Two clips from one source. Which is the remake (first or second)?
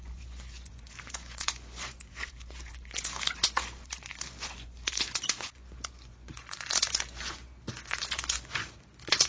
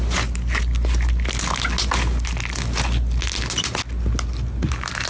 first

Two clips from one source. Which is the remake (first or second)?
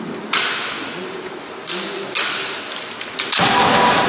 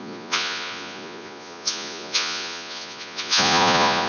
second